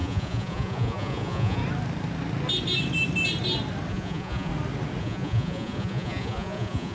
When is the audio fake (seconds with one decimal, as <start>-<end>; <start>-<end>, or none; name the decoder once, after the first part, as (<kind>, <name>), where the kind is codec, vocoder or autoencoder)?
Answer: 0.0-1.6 (vocoder, Vocos); 3.9-4.5; 5.0-6.9